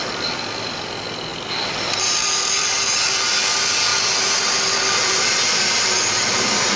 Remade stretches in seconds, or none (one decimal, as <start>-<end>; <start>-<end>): 0.0-3.9; 4.7-6.8